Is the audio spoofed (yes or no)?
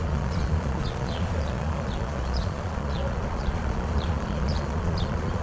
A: yes